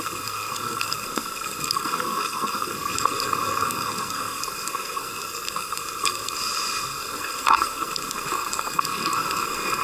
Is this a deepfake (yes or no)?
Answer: yes